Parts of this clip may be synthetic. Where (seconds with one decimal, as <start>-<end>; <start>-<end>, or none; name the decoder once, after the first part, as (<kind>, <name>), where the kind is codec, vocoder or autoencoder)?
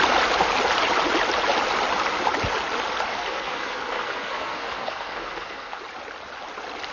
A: 3.1-5.8 (codec, SNAC)